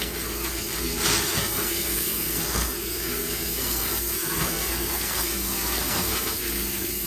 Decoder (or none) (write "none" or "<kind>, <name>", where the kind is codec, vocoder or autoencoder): codec, SNAC